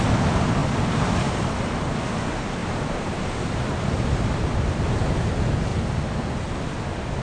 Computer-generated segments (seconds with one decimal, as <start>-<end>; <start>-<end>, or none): 0.6-1.8; 2.6-4.3; 5.7-6.2